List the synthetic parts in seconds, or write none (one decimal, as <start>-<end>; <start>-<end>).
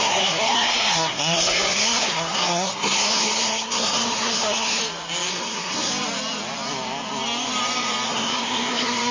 0.0-4.8; 5.3-5.9; 8.1-9.1